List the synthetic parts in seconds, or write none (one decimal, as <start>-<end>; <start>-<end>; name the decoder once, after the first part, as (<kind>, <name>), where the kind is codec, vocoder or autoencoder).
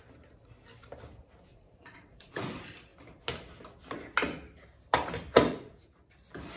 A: 1.5-2.4 (vocoder, Vocos); 5.5-6.1